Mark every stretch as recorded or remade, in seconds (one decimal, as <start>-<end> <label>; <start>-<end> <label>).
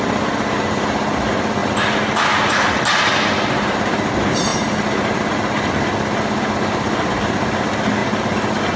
0.0-8.8 recorded